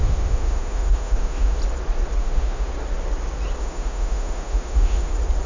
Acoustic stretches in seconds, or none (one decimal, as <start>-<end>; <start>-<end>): 1.6-2.2; 2.7-3.6; 5.1-5.5